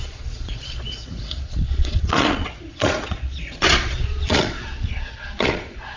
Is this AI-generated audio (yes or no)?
yes